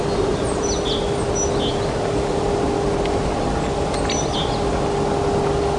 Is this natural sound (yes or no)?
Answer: yes